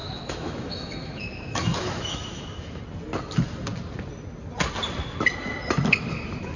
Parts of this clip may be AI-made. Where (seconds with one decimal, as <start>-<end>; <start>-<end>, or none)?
0.0-2.8